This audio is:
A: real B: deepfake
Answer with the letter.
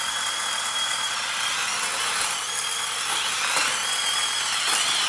A